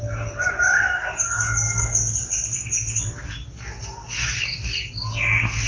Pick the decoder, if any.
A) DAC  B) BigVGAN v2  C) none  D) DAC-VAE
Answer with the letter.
C